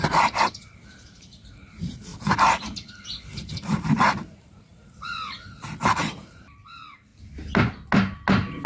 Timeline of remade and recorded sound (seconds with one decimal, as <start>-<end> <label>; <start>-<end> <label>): 0.0-2.1 remade; 2.1-3.5 recorded; 3.5-7.1 remade; 7.1-8.7 recorded